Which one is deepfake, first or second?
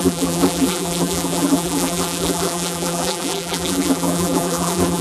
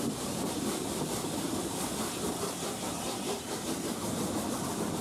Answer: first